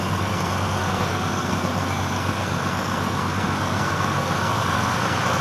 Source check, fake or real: fake